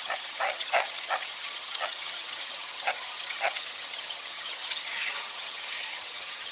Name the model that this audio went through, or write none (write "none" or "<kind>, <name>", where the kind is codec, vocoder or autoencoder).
vocoder, HiFi-GAN